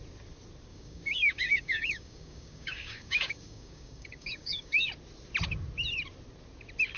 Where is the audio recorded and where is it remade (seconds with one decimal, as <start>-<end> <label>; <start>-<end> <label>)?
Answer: 0.0-0.7 recorded; 0.7-4.9 remade; 4.9-7.0 recorded